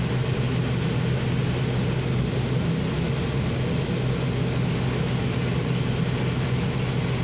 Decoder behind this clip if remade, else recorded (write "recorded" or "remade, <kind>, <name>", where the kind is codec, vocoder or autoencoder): recorded